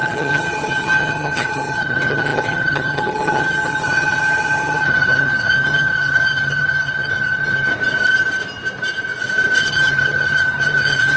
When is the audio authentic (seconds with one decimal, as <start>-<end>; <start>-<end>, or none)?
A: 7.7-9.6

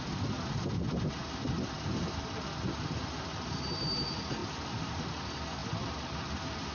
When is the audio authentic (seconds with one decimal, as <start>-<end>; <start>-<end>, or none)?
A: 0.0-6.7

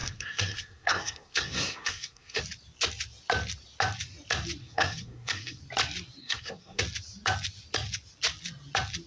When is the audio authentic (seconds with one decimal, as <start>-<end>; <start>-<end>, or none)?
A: 2.4-4.6; 5.6-6.2; 6.8-9.1

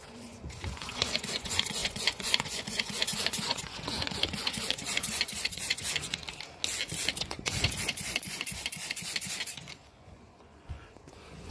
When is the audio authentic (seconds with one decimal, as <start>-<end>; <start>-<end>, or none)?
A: 6.2-7.2

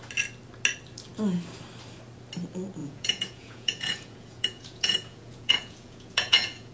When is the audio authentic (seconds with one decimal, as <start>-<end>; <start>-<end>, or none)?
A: 0.0-2.8

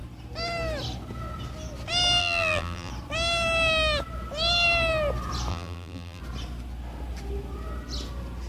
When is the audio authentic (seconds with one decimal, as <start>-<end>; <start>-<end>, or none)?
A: 0.0-2.2; 2.9-5.5; 6.2-8.5

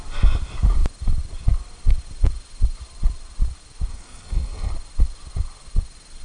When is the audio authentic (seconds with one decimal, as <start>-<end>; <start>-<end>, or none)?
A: 0.0-3.9; 4.7-6.2